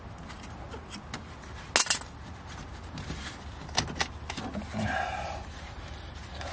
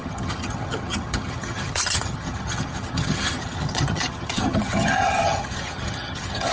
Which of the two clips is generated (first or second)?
second